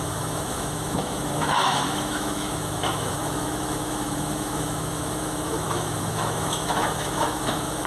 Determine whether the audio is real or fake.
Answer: fake